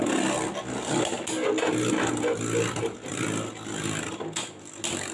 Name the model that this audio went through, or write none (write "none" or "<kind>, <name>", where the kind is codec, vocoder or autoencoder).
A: none